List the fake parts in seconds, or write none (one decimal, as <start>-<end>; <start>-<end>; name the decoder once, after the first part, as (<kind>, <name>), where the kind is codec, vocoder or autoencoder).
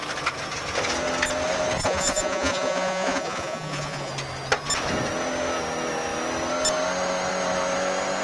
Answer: 1.8-4.1 (vocoder, Vocos)